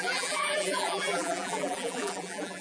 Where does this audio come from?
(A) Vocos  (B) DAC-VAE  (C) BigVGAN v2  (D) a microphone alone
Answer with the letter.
C